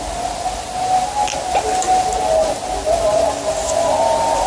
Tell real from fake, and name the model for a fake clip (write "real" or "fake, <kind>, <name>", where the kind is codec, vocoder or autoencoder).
real